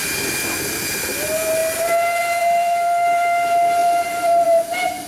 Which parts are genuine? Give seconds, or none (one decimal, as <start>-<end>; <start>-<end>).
0.0-3.8; 4.6-5.1